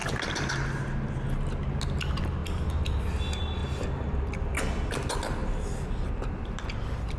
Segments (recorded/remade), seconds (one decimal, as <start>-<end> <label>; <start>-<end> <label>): 0.0-7.2 recorded